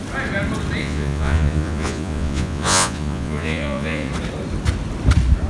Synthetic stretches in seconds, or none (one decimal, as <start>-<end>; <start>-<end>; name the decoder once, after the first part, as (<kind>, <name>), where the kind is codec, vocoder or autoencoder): 0.8-4.1 (vocoder, Vocos)

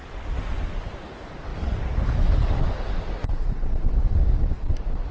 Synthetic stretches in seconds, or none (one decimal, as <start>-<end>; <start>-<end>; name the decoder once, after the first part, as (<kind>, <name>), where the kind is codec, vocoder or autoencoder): none

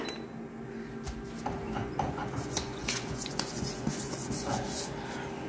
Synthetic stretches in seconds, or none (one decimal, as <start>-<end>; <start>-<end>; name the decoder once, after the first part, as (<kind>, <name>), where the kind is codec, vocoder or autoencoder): 1.8-4.9 (vocoder, Vocos)

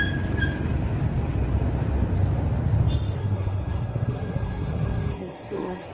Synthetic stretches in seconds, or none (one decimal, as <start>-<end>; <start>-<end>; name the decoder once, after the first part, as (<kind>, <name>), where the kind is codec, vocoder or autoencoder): 3.2-5.9 (codec, SNAC)

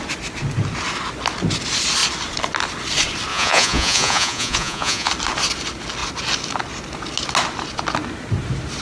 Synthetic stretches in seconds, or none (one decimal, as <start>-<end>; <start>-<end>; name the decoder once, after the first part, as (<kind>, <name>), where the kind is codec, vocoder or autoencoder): 3.3-5.1 (vocoder, Vocos)

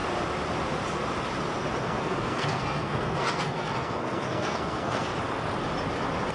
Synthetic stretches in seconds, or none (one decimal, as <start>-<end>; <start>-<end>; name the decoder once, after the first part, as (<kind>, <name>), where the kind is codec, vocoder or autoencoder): 1.8-5.1 (codec, SNAC)

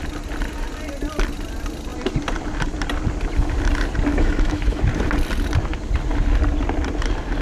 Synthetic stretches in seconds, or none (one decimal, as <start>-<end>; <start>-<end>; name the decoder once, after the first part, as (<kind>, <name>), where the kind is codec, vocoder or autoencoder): 4.1-4.8 (autoencoder, DAC-VAE)

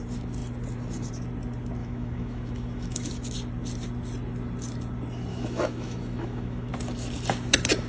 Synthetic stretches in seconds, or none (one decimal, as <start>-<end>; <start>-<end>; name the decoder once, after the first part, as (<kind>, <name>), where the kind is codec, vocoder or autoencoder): 1.8-3.1 (autoencoder, DAC-VAE); 5.3-6.7